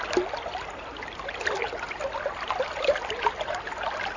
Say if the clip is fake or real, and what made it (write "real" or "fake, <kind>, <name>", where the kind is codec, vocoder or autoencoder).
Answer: real